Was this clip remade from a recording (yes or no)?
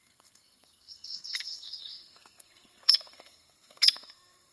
yes